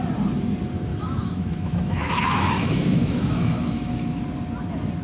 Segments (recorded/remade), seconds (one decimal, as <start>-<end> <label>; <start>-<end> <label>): 0.0-0.9 recorded; 0.9-3.9 remade; 3.9-5.0 recorded